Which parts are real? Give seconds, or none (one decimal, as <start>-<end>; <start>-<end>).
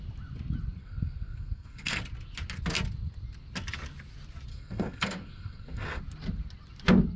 0.0-0.8; 2.0-4.5; 6.0-7.2